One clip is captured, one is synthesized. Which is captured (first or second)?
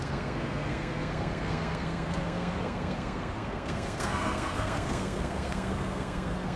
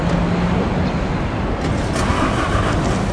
second